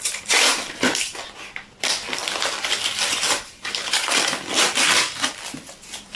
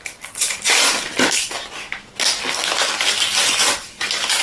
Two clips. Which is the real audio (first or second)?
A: second